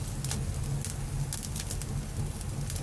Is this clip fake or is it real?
real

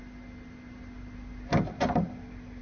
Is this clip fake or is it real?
real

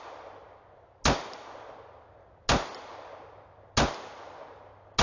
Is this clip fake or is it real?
real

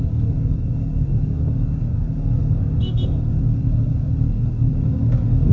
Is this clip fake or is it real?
fake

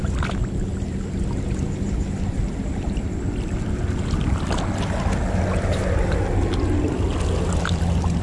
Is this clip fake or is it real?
real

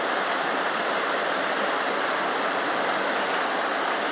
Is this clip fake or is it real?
real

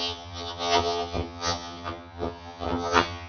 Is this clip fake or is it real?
fake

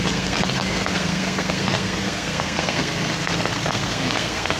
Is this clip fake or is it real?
fake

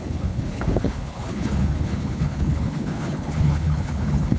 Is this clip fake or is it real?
fake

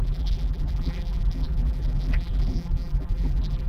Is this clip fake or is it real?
fake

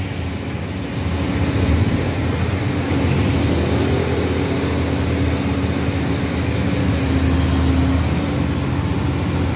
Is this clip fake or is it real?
real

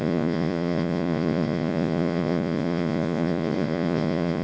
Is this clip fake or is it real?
fake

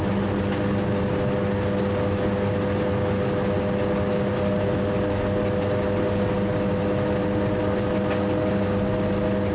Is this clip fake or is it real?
real